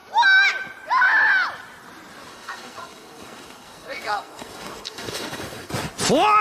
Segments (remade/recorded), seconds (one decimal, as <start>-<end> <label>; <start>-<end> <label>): 0.0-2.3 recorded; 2.3-5.7 remade; 5.7-6.4 recorded